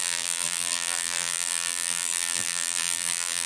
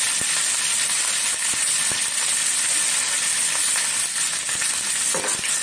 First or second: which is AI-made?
first